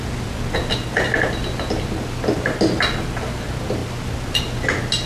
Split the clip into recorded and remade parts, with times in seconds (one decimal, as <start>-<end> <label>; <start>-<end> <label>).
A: 0.0-5.1 recorded

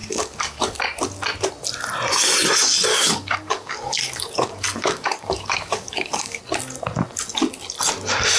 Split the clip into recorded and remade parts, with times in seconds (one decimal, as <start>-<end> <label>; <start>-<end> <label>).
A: 0.0-0.8 remade; 0.8-2.9 recorded; 2.9-6.4 remade; 6.4-8.4 recorded

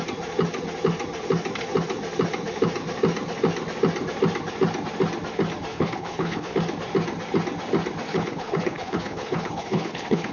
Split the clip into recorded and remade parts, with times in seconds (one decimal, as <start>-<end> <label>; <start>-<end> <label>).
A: 0.0-5.7 recorded; 5.7-6.5 remade; 6.5-8.1 recorded; 8.1-10.3 remade

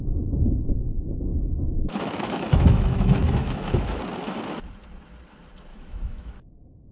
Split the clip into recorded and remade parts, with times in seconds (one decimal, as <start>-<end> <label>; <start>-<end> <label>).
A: 0.0-1.3 recorded; 1.3-4.0 remade; 4.0-5.7 recorded; 5.7-6.3 remade; 6.3-6.9 recorded

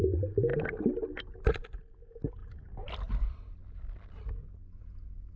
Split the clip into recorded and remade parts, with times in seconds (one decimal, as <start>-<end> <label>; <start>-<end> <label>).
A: 0.0-5.4 recorded

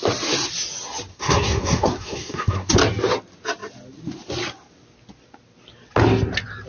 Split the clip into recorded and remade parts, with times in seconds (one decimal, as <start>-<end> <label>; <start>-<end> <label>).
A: 0.0-1.1 recorded; 1.1-2.7 remade; 2.7-6.7 recorded

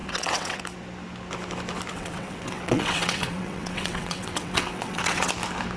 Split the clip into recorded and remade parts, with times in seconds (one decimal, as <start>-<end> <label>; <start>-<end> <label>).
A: 0.0-0.6 remade; 0.6-1.9 recorded; 1.9-5.3 remade; 5.3-5.8 recorded